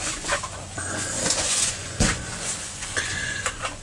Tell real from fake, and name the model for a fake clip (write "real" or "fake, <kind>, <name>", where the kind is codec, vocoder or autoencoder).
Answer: fake, vocoder, Vocos